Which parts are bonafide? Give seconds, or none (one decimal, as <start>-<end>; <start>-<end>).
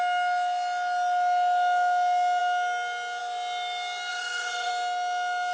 0.0-4.1; 4.7-5.5